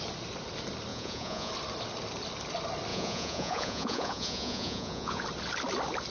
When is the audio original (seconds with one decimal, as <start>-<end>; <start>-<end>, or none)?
0.0-0.9; 1.5-2.9; 5.2-6.1